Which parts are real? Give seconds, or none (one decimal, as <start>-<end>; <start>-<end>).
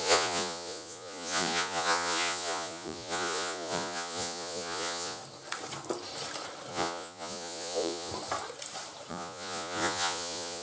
5.2-6.7; 8.1-9.1